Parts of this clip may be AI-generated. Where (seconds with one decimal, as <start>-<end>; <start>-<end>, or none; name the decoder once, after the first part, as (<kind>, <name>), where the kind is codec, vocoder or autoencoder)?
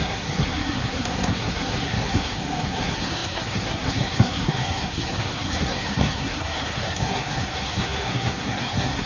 0.0-9.1 (codec, SNAC)